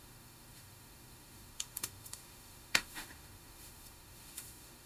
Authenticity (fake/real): fake